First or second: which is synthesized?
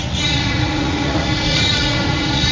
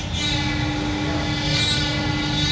first